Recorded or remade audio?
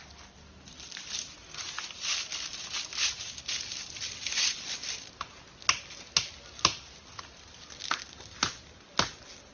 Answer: recorded